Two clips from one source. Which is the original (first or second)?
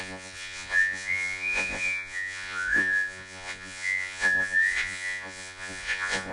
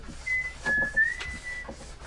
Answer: second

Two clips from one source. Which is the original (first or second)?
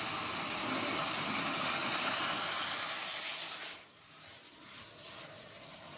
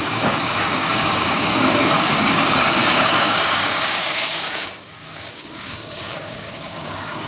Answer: first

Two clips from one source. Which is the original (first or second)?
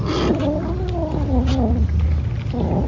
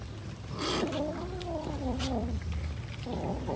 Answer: first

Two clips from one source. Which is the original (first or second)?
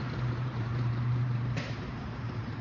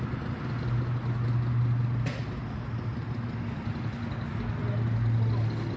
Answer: second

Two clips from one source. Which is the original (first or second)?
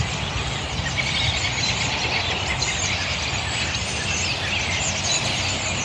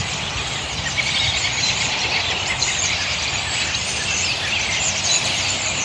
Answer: first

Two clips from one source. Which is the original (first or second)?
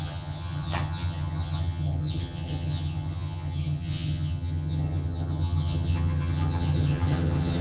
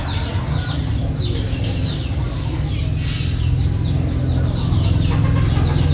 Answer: second